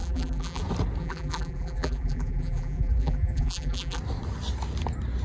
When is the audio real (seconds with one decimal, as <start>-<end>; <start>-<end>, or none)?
0.6-1.0; 4.0-5.2